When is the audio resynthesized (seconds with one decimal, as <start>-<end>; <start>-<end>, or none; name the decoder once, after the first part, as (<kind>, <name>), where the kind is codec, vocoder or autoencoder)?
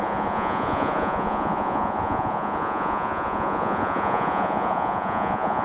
0.0-5.6 (vocoder, Vocos)